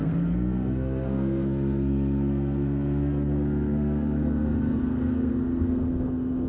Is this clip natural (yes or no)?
no